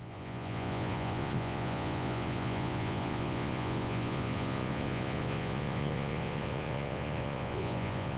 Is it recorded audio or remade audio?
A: remade